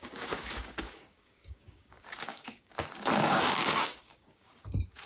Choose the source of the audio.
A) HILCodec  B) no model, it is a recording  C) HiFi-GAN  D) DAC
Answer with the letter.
D